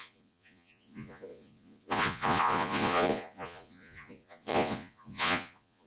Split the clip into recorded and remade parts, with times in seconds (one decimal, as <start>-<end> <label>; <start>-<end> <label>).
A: 0.0-5.9 remade